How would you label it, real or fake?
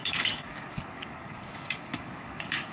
fake